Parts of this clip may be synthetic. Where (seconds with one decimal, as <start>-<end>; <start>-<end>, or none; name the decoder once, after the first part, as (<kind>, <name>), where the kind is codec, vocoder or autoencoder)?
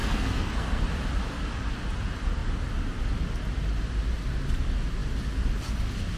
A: 0.0-0.8 (codec, SNAC)